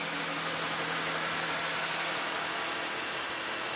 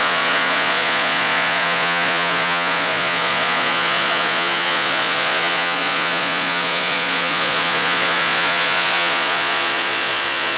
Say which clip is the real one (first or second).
first